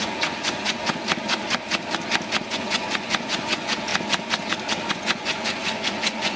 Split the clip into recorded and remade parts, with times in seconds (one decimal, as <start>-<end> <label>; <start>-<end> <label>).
0.0-1.0 remade; 1.0-2.5 recorded; 2.5-3.9 remade; 3.9-4.9 recorded; 4.9-6.4 remade